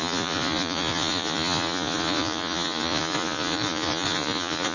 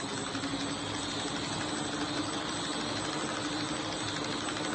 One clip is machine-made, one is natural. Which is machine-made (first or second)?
first